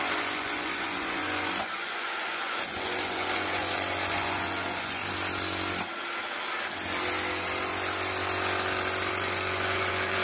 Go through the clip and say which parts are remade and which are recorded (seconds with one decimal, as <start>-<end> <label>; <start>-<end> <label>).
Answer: 0.0-5.0 remade; 5.0-9.1 recorded; 9.1-10.2 remade

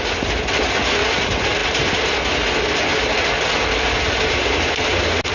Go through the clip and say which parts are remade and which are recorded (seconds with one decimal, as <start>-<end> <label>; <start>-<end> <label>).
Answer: 0.0-5.3 recorded

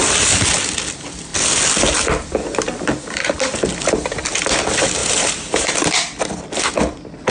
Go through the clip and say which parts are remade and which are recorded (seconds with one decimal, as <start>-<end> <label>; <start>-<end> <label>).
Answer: 0.0-5.0 recorded; 5.0-5.7 remade; 5.7-7.3 recorded

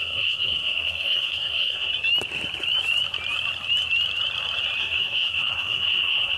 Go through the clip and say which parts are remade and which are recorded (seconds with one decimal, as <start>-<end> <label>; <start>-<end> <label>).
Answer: 0.0-1.9 remade; 1.9-4.8 recorded; 4.8-6.4 remade

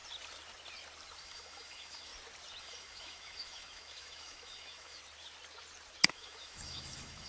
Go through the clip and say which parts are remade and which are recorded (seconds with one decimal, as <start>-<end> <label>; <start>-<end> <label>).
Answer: 0.0-1.2 recorded; 1.2-2.1 remade; 2.1-2.6 recorded; 2.6-5.0 remade; 5.0-6.1 recorded; 6.1-7.3 remade

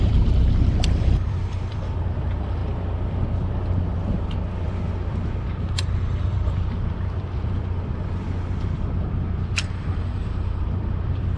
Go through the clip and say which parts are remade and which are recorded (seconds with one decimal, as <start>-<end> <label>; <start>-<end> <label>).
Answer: 0.0-2.6 remade; 2.6-6.7 recorded; 6.7-11.4 remade